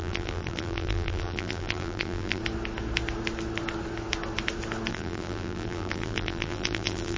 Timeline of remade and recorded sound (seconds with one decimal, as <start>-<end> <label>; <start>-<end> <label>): 0.0-2.4 remade; 2.4-4.9 recorded; 4.9-7.2 remade